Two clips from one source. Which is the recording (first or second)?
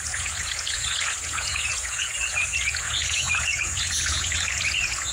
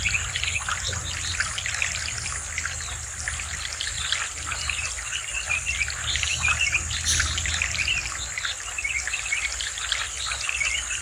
second